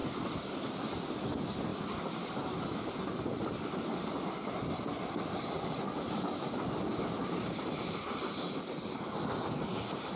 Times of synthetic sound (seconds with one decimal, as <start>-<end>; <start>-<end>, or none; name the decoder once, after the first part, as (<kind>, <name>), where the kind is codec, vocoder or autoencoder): 0.0-0.7 (vocoder, BigVGAN v2); 1.7-6.8